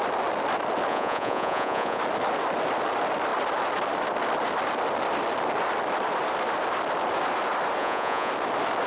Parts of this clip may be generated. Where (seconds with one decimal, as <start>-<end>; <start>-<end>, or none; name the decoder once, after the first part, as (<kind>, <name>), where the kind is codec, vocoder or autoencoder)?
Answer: 0.9-2.0 (vocoder, Vocos); 7.8-8.3